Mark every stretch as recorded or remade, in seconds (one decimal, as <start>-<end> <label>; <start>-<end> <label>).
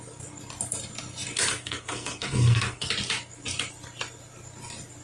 0.0-1.5 recorded; 1.5-2.9 remade; 2.9-5.0 recorded